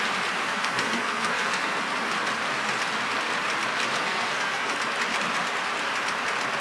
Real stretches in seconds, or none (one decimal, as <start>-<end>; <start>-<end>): 0.0-0.4; 1.7-4.0; 4.8-6.6